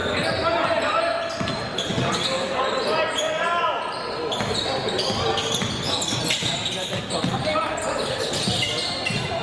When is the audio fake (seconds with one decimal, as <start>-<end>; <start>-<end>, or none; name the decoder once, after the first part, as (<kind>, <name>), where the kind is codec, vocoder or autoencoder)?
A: none